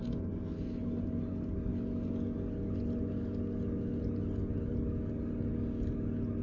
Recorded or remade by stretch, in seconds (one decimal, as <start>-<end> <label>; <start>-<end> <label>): 0.0-6.4 recorded